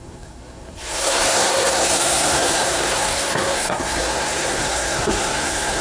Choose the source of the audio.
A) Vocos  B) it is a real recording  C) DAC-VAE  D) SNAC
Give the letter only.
D